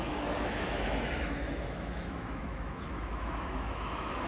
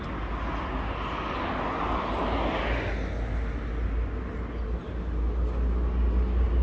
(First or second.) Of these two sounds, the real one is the second